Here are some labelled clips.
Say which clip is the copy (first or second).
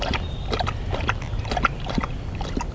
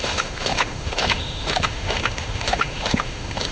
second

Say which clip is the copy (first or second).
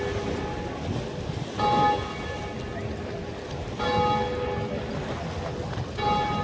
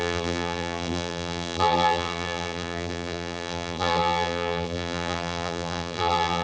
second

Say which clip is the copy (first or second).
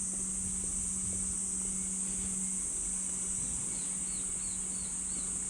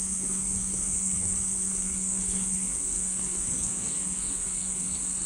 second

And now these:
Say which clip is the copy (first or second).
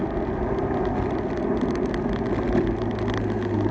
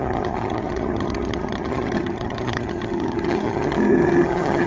second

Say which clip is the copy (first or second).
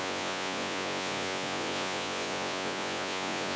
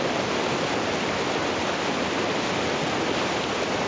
first